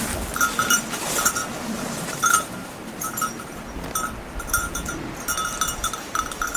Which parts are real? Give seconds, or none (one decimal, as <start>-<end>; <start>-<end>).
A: 0.0-6.6